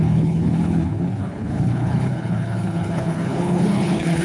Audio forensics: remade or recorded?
remade